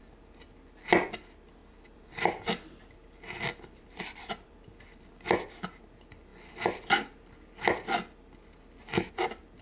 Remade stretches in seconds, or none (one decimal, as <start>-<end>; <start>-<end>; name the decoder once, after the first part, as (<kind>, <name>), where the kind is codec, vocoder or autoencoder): 1.6-5.1 (vocoder, BigVGAN v2)